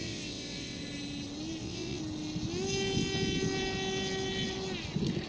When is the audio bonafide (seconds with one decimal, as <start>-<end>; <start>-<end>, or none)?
0.8-1.6; 2.0-5.3